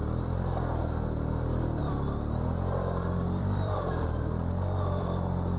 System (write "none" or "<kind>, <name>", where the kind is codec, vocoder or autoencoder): vocoder, BigVGAN v2